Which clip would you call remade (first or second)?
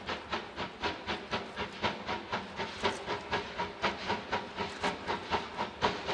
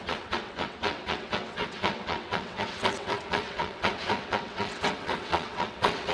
second